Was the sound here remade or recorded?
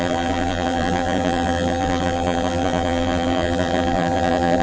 remade